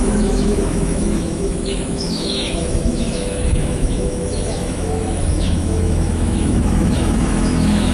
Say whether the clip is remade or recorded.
remade